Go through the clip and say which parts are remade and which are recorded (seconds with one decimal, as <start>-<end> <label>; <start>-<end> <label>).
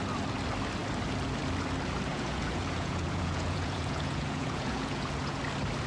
0.0-2.1 recorded; 2.1-5.4 remade; 5.4-5.9 recorded